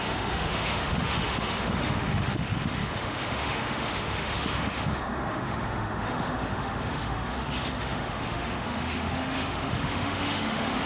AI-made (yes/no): yes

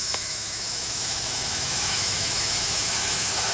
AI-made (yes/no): yes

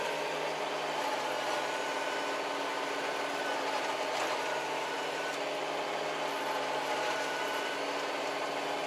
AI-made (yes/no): no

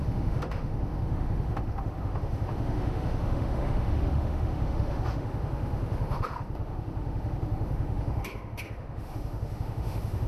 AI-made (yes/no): yes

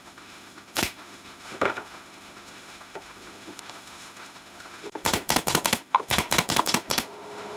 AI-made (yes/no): yes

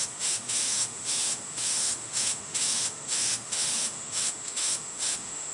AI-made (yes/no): yes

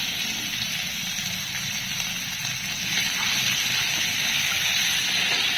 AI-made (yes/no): no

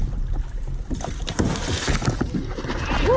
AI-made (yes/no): no